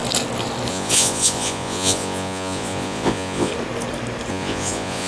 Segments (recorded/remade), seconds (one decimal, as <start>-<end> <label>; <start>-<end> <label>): 0.0-0.7 recorded; 0.7-3.5 remade; 3.5-4.3 recorded; 4.3-5.1 remade